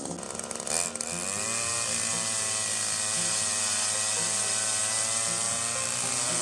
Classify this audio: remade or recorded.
recorded